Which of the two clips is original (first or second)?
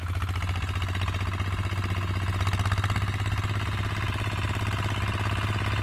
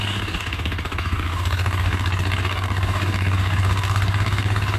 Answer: first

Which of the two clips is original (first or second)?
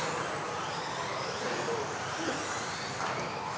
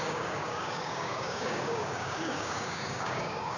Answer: first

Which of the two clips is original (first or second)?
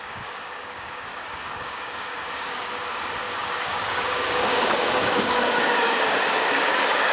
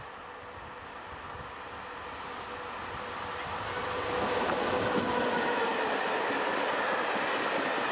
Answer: second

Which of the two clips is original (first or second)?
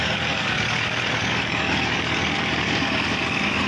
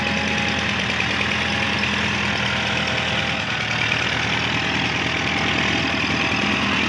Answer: second